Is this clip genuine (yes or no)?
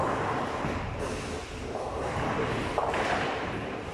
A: no